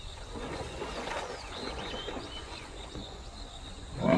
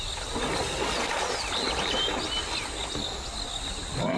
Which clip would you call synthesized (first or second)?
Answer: first